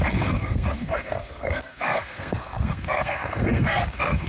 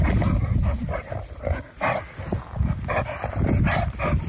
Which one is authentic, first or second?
second